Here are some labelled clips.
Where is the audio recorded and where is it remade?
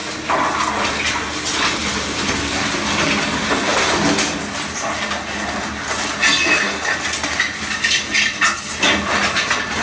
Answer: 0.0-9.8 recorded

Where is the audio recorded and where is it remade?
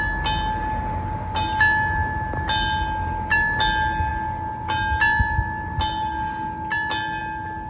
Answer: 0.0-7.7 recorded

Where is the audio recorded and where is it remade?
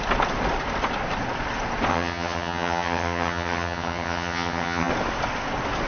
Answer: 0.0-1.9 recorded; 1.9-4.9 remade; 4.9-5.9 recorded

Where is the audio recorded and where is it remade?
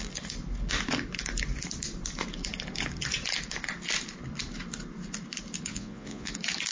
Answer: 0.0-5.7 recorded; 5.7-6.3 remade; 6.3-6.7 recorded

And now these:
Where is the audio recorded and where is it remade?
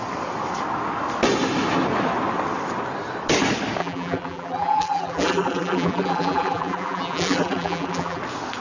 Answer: 0.0-3.8 recorded; 3.8-8.2 remade; 8.2-8.6 recorded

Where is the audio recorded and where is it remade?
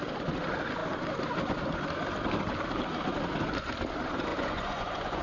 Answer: 0.0-4.3 recorded; 4.3-5.2 remade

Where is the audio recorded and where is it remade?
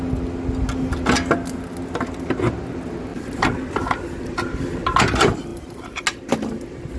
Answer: 0.0-7.0 recorded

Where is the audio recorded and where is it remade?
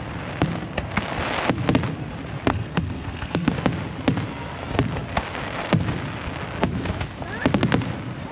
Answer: 0.0-2.5 recorded; 2.5-3.5 remade; 3.5-8.3 recorded